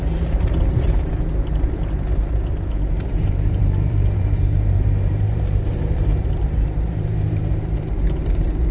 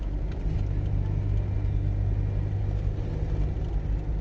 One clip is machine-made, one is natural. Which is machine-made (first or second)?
first